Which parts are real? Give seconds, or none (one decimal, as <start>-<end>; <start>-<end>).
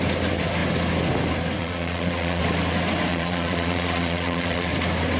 0.0-1.6; 2.4-3.1; 4.7-5.2